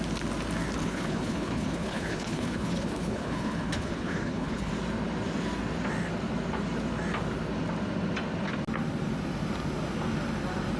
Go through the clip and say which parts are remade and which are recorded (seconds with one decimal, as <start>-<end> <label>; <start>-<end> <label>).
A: 0.0-0.8 recorded; 0.8-4.7 remade; 4.7-10.8 recorded